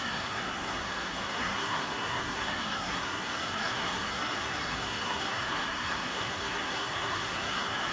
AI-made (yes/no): yes